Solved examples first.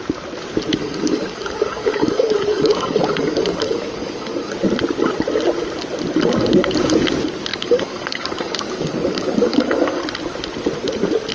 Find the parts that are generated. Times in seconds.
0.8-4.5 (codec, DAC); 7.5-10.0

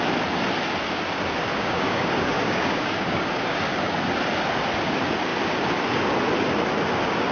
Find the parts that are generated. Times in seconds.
1.5-3.6 (codec, DAC)

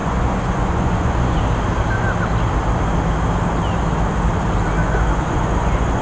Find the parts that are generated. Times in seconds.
0.0-1.4 (vocoder, Vocos); 4.8-6.0

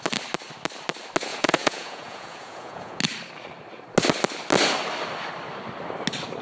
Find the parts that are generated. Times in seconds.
1.3-3.0 (vocoder, Vocos)

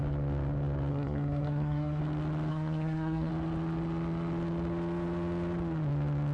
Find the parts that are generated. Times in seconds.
0.9-2.0 (codec, SNAC); 2.5-3.3

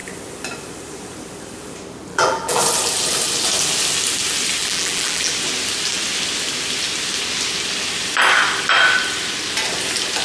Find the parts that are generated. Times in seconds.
2.1-2.6 (vocoder, BigVGAN v2); 4.6-5.3

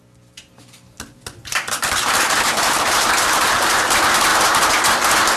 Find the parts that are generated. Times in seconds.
1.5-3.9 (vocoder, BigVGAN v2)